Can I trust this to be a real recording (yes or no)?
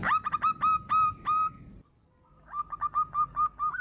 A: yes